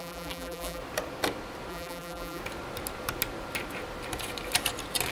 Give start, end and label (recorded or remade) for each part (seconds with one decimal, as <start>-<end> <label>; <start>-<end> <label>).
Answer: 0.0-0.8 remade; 0.8-1.7 recorded; 1.7-2.4 remade; 2.4-5.1 recorded